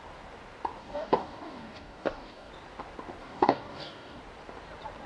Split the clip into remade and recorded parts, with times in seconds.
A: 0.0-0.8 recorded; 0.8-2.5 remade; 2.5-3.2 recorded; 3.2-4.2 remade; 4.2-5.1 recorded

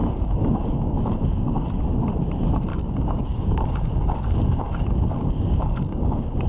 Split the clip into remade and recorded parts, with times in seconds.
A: 0.0-1.7 remade; 1.7-2.7 recorded; 2.7-6.5 remade

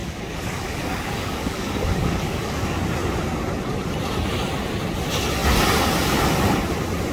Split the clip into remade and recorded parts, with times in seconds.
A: 0.0-2.8 remade; 2.8-7.1 recorded

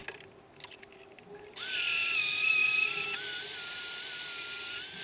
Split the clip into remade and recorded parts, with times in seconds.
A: 0.0-5.0 recorded

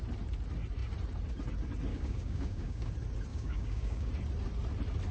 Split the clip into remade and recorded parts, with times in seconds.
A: 0.0-1.9 recorded; 1.9-2.9 remade; 2.9-3.3 recorded; 3.3-4.1 remade; 4.1-5.1 recorded

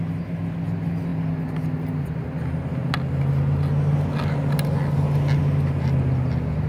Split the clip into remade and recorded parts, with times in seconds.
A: 0.0-6.7 recorded

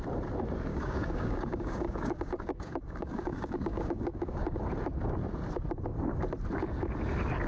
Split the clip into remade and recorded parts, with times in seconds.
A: 0.0-0.7 recorded; 0.7-4.6 remade; 4.6-7.5 recorded

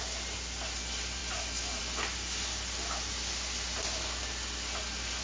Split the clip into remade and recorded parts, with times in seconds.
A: 0.0-5.2 recorded